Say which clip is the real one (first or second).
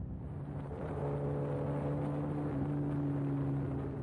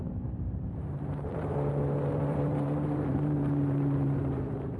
first